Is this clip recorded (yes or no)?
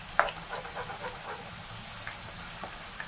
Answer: yes